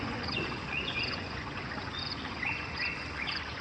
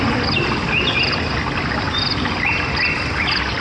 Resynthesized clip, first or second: first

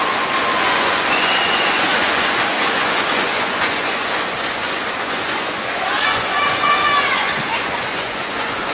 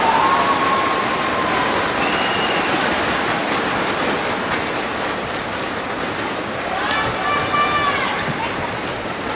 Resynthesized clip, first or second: first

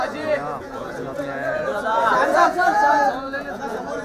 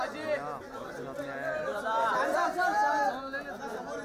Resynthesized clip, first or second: first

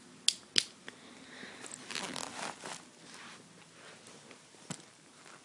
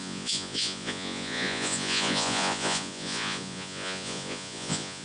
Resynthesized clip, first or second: second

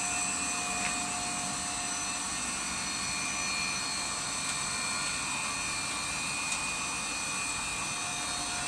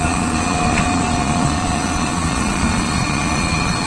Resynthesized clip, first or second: second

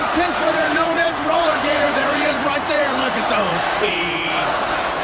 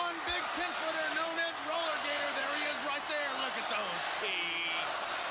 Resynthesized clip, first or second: first